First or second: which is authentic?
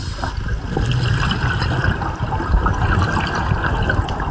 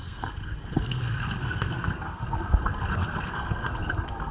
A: first